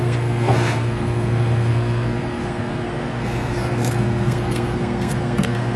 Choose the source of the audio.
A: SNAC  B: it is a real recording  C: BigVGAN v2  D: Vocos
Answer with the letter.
A